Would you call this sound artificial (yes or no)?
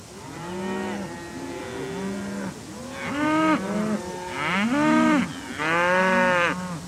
no